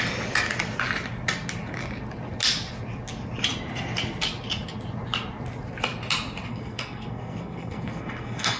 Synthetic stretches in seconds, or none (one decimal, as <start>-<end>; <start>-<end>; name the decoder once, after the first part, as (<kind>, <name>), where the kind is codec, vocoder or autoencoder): 6.5-8.6 (codec, SNAC)